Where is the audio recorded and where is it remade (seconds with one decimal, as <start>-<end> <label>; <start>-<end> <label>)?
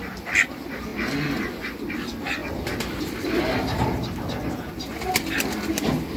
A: 0.0-6.2 recorded